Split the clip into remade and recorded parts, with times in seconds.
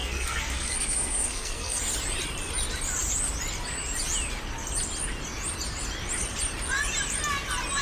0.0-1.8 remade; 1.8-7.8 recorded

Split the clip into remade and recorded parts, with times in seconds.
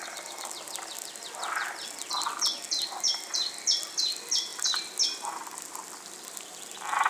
0.0-7.1 recorded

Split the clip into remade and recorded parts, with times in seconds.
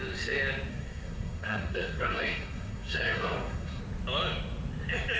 0.0-0.7 recorded; 0.7-3.8 remade; 3.8-5.2 recorded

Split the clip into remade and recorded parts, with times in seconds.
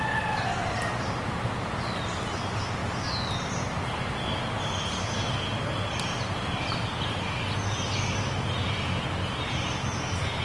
0.0-10.4 recorded